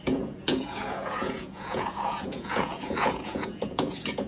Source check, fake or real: fake